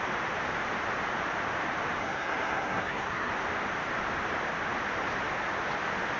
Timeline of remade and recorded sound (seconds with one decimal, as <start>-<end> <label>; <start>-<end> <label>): 0.0-2.0 recorded; 2.0-3.3 remade; 3.3-6.2 recorded